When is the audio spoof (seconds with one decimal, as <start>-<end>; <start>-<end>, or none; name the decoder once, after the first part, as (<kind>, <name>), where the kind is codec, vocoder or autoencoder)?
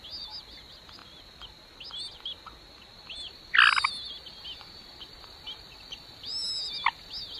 none